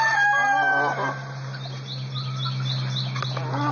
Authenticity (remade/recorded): recorded